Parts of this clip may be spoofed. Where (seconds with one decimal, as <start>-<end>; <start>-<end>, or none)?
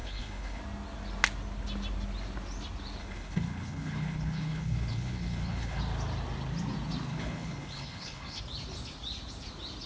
0.0-0.6; 3.0-5.8; 7.1-8.4